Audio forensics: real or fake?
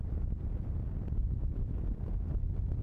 real